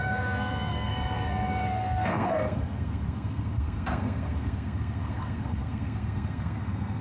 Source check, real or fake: fake